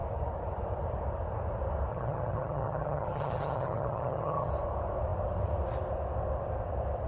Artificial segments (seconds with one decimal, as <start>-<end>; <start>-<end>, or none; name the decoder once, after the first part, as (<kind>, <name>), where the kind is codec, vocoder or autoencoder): 1.9-4.5 (vocoder, HiFi-GAN)